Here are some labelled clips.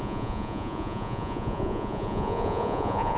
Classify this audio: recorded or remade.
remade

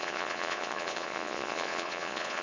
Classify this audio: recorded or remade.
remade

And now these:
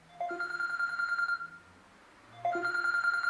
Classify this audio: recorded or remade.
recorded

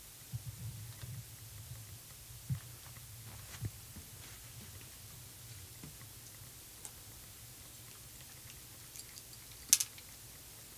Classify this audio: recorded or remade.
recorded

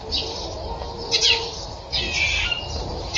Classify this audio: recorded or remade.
recorded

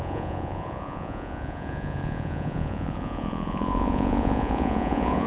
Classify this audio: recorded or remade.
remade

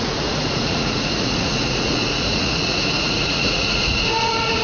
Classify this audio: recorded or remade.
remade